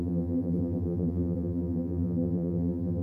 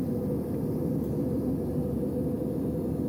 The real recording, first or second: second